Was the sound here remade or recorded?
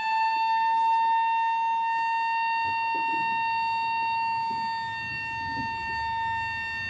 recorded